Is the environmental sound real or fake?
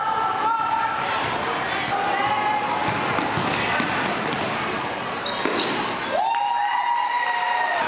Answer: real